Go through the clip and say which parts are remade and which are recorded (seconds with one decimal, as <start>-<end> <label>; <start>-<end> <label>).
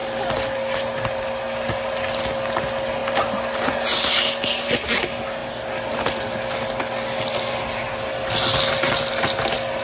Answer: 0.0-9.8 recorded